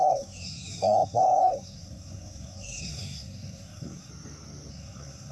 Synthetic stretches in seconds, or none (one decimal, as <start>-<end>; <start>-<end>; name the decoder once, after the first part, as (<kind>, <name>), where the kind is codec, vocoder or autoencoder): 0.0-4.1 (codec, SNAC); 4.7-5.3